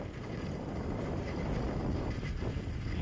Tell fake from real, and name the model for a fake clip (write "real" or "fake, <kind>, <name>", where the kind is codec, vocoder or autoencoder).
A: real